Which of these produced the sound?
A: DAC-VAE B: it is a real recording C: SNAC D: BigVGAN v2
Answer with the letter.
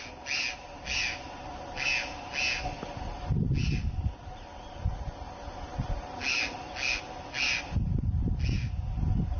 B